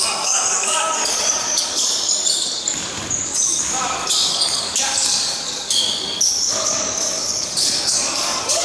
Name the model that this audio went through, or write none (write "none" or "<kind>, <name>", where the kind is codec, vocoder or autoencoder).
codec, DAC